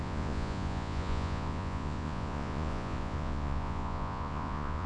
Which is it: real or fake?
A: fake